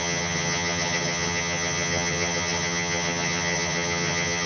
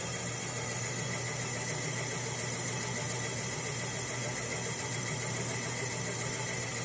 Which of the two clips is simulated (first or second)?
first